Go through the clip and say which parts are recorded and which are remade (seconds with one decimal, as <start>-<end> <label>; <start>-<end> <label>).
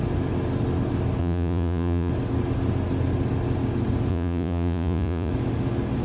0.0-1.2 recorded; 1.2-2.1 remade; 2.1-4.1 recorded; 4.1-5.3 remade; 5.3-6.0 recorded